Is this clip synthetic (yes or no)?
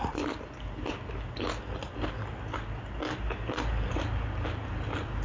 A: no